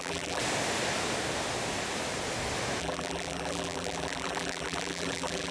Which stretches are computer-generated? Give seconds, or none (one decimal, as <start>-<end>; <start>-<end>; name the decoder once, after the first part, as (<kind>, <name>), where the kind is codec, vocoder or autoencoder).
0.0-0.4 (vocoder, BigVGAN v2); 2.8-5.5